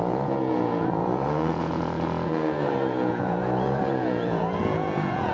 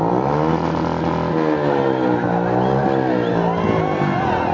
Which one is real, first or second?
second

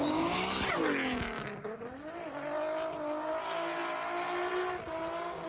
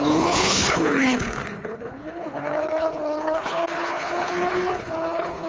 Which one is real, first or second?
first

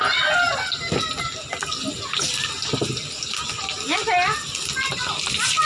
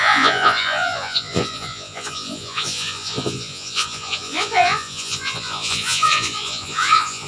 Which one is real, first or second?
first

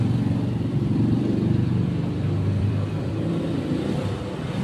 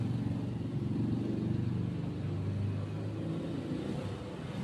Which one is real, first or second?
second